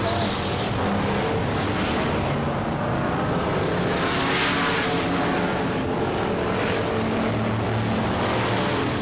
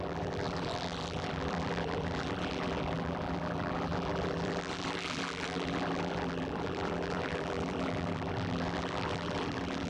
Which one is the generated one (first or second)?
second